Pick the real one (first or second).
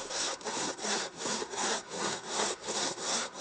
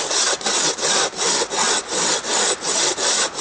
second